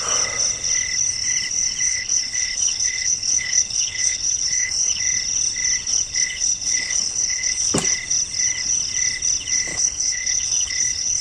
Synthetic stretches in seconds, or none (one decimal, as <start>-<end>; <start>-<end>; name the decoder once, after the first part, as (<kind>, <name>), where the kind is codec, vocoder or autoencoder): 1.9-5.0 (codec, HILCodec); 5.9-7.7; 9.7-11.2